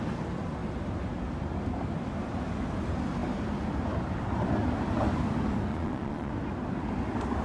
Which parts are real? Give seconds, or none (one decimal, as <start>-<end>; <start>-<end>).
0.0-5.7; 6.3-7.4